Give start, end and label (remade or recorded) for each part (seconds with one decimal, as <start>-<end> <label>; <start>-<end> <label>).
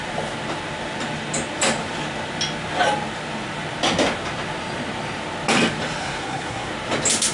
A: 0.0-6.0 recorded; 6.0-6.7 remade; 6.7-7.3 recorded